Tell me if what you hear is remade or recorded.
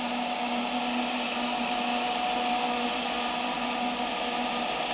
recorded